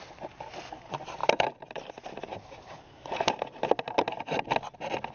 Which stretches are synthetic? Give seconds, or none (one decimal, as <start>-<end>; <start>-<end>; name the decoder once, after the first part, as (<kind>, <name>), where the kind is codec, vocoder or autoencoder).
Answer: 1.2-1.9 (vocoder, BigVGAN v2); 2.3-3.4